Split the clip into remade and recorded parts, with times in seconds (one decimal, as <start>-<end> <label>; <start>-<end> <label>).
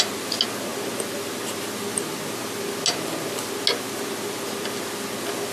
0.0-5.5 recorded